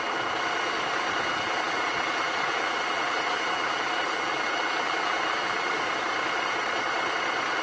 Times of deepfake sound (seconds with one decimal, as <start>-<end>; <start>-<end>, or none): 1.3-5.9